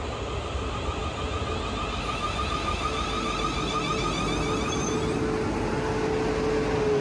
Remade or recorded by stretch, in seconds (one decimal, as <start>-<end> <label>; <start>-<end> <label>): 0.0-7.0 recorded